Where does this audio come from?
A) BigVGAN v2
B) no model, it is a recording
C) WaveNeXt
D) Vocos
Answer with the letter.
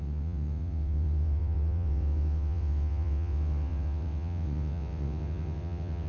C